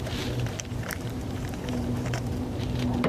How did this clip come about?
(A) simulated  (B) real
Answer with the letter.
A